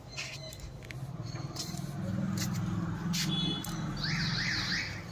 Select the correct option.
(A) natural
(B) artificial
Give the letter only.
A